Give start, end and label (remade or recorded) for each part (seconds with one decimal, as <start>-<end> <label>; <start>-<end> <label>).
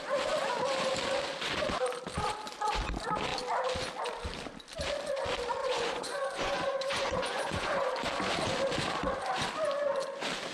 0.0-5.6 recorded; 5.6-7.9 remade; 7.9-10.5 recorded